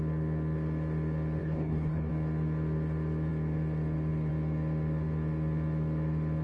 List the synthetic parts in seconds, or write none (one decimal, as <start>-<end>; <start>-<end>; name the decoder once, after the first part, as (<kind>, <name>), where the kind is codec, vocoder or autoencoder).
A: 1.4-2.1 (codec, HILCodec)